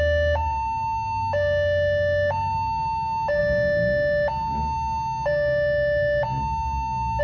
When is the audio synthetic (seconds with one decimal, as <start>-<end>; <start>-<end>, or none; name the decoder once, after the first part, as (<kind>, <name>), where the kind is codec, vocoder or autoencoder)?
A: none